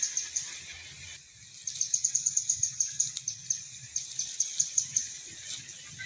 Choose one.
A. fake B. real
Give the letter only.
B